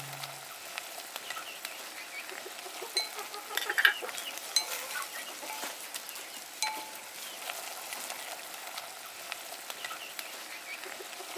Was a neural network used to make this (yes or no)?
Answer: no